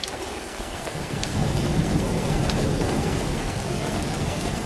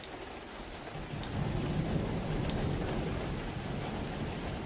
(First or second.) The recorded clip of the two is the second